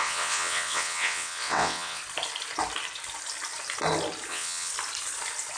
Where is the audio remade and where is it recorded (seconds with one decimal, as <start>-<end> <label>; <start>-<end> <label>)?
0.0-2.0 remade; 2.0-4.3 recorded; 4.3-4.7 remade; 4.7-5.6 recorded